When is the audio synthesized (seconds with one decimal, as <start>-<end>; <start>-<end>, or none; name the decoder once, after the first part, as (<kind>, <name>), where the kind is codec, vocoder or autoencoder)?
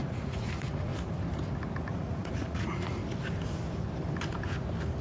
0.0-0.9 (vocoder, Vocos); 1.8-3.0